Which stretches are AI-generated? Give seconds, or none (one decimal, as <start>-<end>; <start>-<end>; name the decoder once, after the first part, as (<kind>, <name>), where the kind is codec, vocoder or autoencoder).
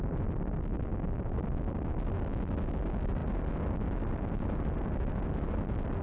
none